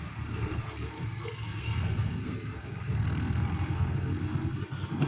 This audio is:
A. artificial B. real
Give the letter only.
A